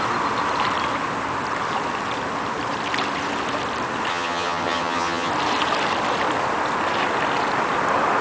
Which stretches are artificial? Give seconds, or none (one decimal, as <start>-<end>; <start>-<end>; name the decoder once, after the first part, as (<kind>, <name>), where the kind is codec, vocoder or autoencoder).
4.1-5.3 (vocoder, HiFi-GAN)